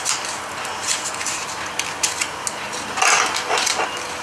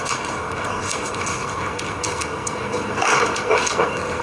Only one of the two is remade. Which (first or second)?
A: second